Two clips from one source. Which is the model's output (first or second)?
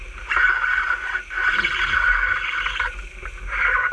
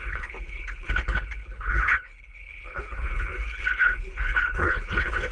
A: second